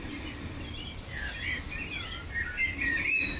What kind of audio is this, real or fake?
real